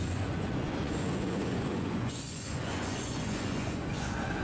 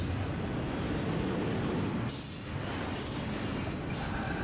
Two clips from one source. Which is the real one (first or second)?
second